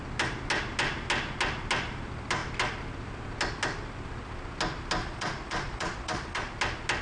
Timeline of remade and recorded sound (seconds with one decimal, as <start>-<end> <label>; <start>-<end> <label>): 0.0-5.0 recorded; 5.0-6.5 remade; 6.5-7.0 recorded